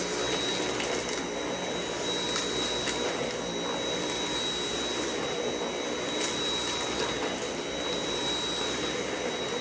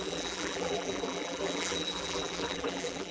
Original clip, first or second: first